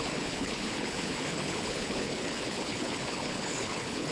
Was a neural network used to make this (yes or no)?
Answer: yes